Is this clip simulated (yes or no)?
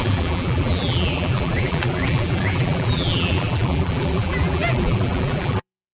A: yes